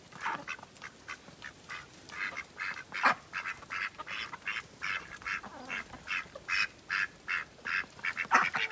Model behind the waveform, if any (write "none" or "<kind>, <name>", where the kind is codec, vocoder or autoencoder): none